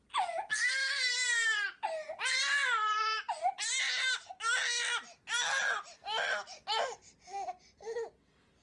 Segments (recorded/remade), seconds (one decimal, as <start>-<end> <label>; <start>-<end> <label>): 0.0-8.6 recorded